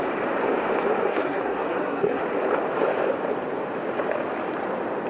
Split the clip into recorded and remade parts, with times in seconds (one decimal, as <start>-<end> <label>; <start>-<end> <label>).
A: 0.0-1.1 recorded; 1.1-2.2 remade; 2.2-5.1 recorded